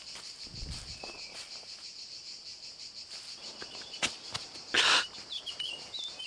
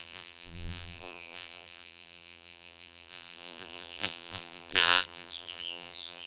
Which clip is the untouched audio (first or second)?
first